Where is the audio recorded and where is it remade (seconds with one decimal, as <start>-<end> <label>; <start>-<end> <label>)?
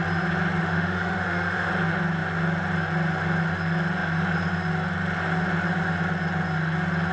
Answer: 0.0-0.6 recorded; 0.6-1.7 remade; 1.7-7.1 recorded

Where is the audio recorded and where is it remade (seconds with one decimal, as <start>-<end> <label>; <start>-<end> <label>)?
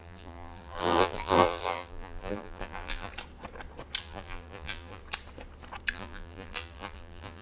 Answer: 0.0-3.1 remade; 3.1-4.0 recorded; 4.0-5.0 remade; 5.0-5.9 recorded; 5.9-7.4 remade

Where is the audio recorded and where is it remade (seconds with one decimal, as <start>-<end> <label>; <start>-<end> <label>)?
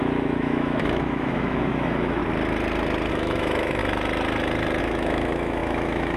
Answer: 0.0-2.2 remade; 2.2-3.1 recorded; 3.1-3.8 remade; 3.8-4.8 recorded; 4.8-6.2 remade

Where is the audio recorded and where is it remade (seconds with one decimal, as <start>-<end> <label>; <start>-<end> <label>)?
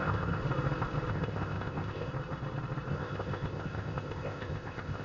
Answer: 0.0-0.4 remade; 0.4-1.1 recorded; 1.1-2.1 remade; 2.1-2.9 recorded; 2.9-5.0 remade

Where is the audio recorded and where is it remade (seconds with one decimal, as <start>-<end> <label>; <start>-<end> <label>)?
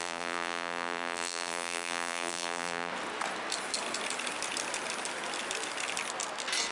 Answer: 0.0-2.9 remade; 2.9-6.7 recorded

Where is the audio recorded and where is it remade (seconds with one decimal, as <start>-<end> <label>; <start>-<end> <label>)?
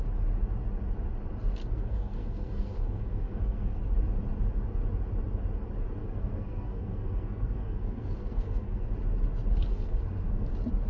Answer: 0.0-1.6 recorded; 1.6-3.8 remade; 3.8-6.0 recorded; 6.0-8.9 remade; 8.9-9.7 recorded; 9.7-10.5 remade; 10.5-10.9 recorded